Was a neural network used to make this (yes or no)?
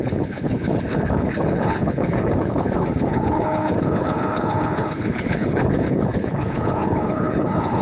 yes